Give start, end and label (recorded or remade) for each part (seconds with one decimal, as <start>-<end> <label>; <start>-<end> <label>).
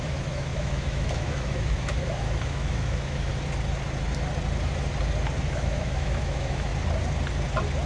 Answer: 0.0-3.3 remade; 3.3-5.5 recorded; 5.5-6.7 remade; 6.7-7.9 recorded